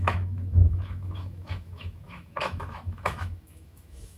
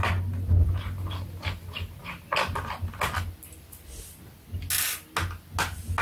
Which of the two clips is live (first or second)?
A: second